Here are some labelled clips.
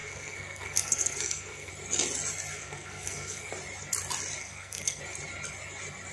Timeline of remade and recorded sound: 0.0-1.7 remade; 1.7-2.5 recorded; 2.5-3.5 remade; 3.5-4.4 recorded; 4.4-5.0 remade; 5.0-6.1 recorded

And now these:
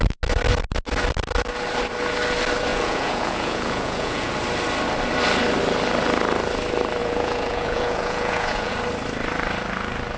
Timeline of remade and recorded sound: 0.0-2.7 recorded; 2.7-4.3 remade; 4.3-7.0 recorded; 7.0-8.7 remade; 8.7-10.2 recorded

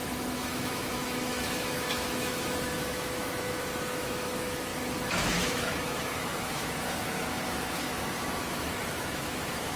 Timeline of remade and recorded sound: 0.0-9.8 remade

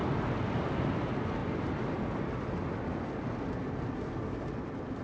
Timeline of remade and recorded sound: 0.0-5.0 recorded

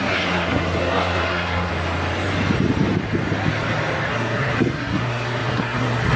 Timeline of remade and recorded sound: 0.0-1.7 remade; 1.7-4.1 recorded; 4.1-6.2 remade

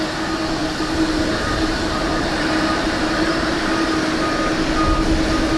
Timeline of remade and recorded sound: 0.0-0.6 recorded; 0.6-4.0 remade; 4.0-5.6 recorded

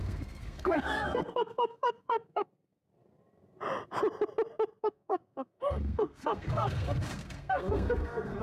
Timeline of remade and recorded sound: 0.0-2.8 remade; 2.8-4.8 recorded; 4.8-8.4 remade

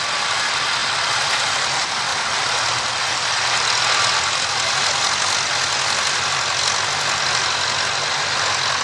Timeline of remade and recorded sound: 0.0-2.1 recorded; 2.1-3.8 remade; 3.8-8.8 recorded